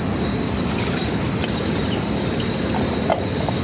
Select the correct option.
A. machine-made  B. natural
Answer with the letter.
B